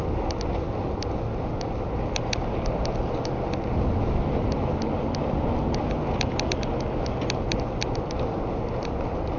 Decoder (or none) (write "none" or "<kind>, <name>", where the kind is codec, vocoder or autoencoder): none